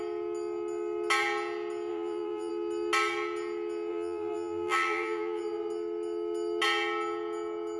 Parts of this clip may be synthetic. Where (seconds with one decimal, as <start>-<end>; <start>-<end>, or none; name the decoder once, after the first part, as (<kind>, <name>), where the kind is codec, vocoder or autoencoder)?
1.9-2.5 (vocoder, BigVGAN v2); 3.9-5.4